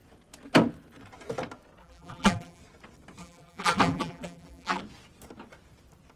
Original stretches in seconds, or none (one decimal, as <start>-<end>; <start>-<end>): 0.0-1.8; 2.6-3.2; 4.8-6.2